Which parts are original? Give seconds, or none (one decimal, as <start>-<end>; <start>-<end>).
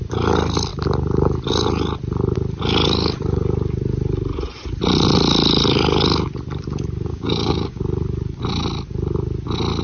0.0-7.1; 7.8-9.8